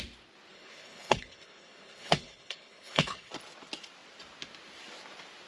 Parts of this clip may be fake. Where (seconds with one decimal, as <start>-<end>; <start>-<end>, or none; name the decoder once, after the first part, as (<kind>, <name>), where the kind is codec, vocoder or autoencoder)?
0.5-3.3 (codec, HILCodec)